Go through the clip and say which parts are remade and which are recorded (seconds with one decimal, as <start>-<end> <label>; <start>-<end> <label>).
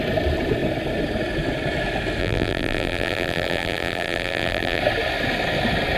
0.0-2.2 recorded; 2.2-4.8 remade; 4.8-6.0 recorded